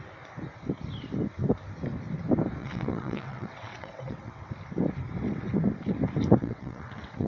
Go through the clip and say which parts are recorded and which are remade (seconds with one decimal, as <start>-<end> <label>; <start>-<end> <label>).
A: 0.0-2.6 recorded; 2.6-4.5 remade; 4.5-6.3 recorded; 6.3-7.3 remade